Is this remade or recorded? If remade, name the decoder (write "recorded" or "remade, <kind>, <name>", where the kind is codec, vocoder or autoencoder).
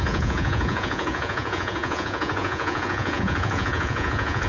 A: remade, vocoder, Vocos